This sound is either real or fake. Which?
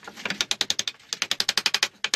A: real